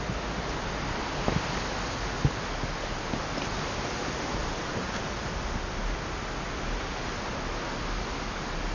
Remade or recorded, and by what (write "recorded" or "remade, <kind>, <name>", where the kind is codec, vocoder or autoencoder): recorded